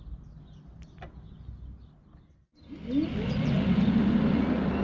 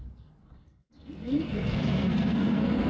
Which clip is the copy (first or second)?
second